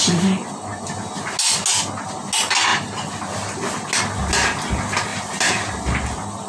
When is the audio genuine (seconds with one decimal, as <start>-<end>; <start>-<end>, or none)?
0.0-6.5